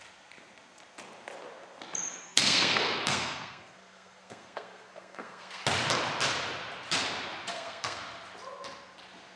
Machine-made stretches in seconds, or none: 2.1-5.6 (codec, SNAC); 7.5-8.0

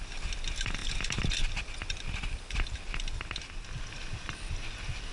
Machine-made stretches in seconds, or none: none

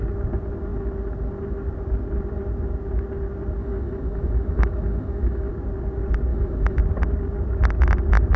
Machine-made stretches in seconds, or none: 3.6-5.5 (autoencoder, DAC-VAE); 6.3-6.8

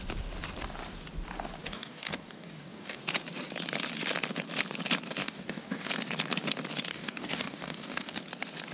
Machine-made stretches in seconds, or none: 1.6-3.0 (codec, DAC); 5.2-5.9; 6.9-8.2

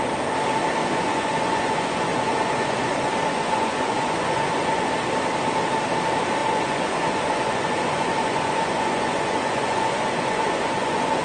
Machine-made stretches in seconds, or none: 0.8-4.9 (vocoder, Vocos); 6.4-11.2

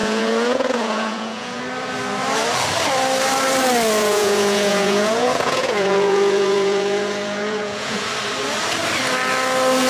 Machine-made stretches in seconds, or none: 0.0-1.6 (vocoder, Vocos); 4.0-8.1